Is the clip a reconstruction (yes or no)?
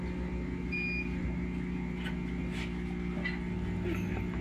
no